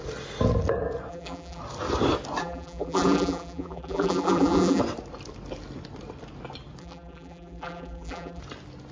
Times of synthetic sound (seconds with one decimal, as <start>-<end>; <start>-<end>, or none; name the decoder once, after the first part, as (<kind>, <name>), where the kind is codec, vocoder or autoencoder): 1.1-1.6 (vocoder, BigVGAN v2); 2.4-4.8; 6.8-8.4

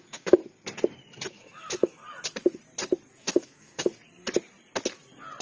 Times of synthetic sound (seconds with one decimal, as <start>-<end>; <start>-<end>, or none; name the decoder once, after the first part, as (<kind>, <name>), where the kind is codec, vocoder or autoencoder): 0.0-0.4 (autoencoder, DAC-VAE); 1.3-2.0; 3.1-3.9

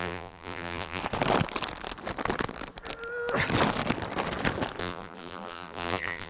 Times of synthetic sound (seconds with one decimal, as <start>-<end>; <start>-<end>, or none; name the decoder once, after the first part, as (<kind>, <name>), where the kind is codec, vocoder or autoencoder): 0.0-1.0 (vocoder, BigVGAN v2); 4.8-6.3

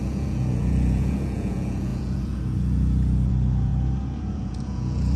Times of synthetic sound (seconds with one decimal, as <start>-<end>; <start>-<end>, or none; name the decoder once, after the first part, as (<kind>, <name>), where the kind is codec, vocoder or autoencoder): 0.0-3.7 (vocoder, Vocos); 4.2-5.2